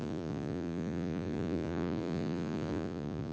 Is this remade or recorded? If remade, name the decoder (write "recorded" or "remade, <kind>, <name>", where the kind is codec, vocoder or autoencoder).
remade, vocoder, Vocos